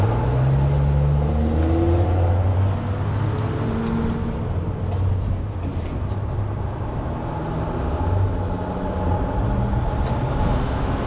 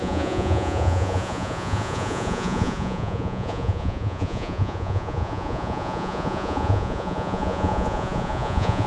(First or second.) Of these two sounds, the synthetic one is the second